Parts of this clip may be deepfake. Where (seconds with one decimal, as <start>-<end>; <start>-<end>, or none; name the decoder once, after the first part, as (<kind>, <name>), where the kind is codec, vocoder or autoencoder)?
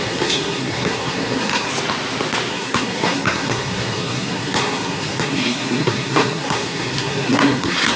0.0-1.7 (codec, SNAC); 2.5-8.0